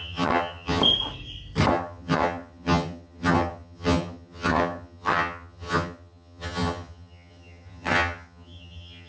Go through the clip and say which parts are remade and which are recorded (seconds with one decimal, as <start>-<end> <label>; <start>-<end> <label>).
0.0-0.8 remade; 0.8-1.7 recorded; 1.7-9.1 remade